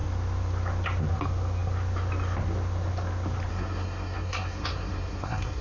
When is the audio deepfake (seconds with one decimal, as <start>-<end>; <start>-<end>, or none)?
3.5-5.6